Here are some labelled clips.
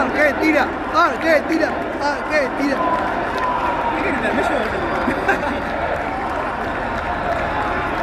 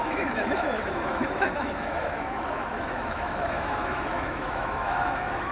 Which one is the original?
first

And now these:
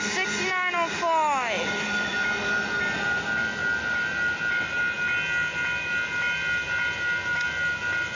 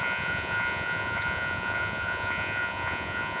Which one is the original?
first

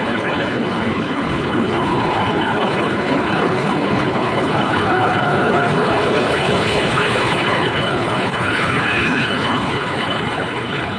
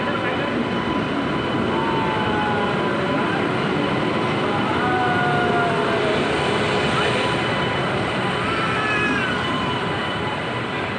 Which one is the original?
second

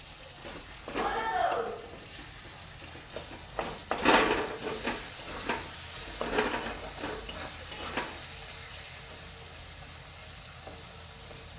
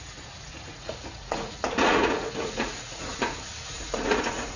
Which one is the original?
first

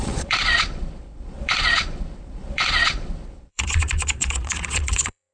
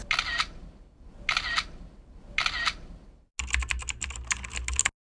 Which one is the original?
second